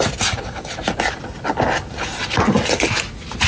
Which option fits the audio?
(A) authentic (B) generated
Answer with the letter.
A